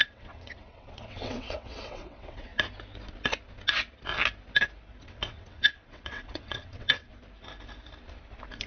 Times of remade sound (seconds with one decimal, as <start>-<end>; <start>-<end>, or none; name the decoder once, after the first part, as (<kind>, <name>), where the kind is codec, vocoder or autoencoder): 0.0-2.5 (vocoder, WaveNeXt); 5.0-7.1